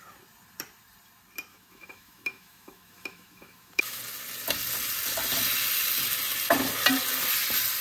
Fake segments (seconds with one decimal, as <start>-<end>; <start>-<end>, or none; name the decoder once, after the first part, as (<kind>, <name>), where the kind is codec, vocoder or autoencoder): 1.5-4.0 (autoencoder, DAC-VAE)